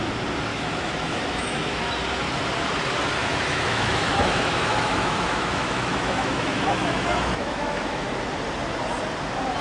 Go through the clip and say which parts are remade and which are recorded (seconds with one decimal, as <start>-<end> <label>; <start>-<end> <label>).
0.0-0.5 recorded; 0.5-1.9 remade; 1.9-3.2 recorded; 3.2-8.1 remade; 8.1-9.6 recorded